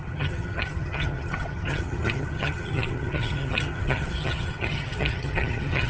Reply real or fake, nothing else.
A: fake